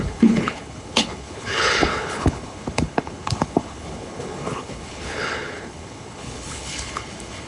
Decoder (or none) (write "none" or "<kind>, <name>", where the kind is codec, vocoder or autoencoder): codec, HILCodec